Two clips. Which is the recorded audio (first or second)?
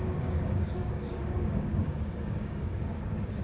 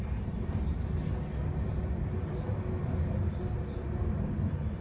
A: second